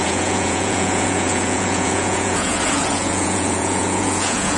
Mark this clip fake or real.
fake